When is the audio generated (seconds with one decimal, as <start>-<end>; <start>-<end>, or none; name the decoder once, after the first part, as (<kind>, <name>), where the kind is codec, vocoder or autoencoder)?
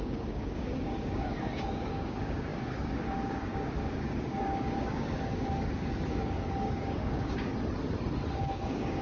0.0-7.5 (codec, DAC); 8.4-9.0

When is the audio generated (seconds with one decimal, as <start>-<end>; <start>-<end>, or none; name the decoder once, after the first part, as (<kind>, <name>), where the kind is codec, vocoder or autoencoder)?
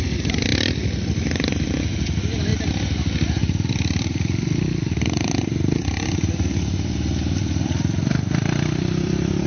0.0-0.5 (vocoder, BigVGAN v2); 1.5-2.5; 3.7-9.5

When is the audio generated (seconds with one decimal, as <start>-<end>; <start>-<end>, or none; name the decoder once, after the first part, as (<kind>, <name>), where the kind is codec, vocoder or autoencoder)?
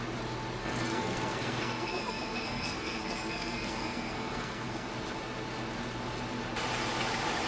0.6-4.9 (codec, SNAC)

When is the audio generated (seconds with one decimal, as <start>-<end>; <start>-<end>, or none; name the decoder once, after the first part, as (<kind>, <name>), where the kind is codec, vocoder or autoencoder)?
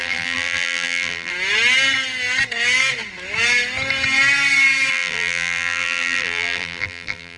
0.0-1.3 (vocoder, BigVGAN v2); 4.9-7.4